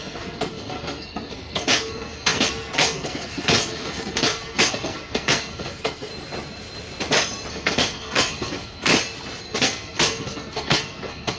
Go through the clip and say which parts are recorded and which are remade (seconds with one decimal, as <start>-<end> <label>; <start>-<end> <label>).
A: 0.0-6.1 remade; 6.1-7.5 recorded; 7.5-8.9 remade; 8.9-9.4 recorded; 9.4-11.4 remade